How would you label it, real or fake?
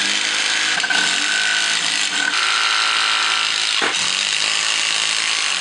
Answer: real